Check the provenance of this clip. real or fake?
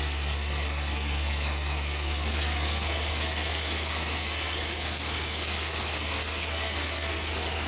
fake